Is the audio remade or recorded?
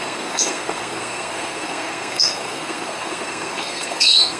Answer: remade